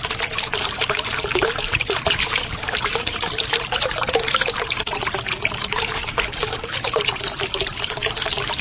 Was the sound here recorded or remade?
remade